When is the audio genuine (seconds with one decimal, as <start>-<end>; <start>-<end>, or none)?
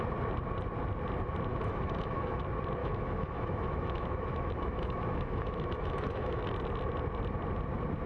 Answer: 0.0-1.5; 2.4-2.8; 6.4-8.1